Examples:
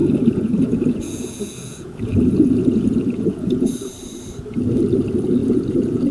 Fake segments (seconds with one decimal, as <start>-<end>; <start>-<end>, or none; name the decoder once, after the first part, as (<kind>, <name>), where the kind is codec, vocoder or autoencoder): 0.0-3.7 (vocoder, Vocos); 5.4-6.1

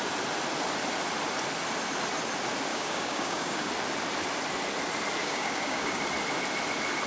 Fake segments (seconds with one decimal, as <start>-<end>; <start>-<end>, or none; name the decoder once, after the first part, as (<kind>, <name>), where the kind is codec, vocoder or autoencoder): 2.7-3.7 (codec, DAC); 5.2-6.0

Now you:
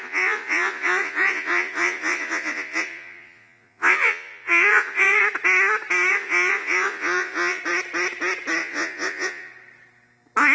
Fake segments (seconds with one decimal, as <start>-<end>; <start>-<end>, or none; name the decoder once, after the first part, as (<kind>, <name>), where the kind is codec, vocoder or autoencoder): 0.0-5.2 (vocoder, Vocos); 6.1-7.6; 8.6-9.5

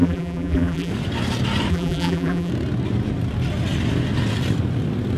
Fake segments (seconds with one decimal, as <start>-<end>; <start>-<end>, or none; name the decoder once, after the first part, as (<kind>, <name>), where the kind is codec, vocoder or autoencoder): 0.0-0.9 (vocoder, BigVGAN v2); 1.7-2.5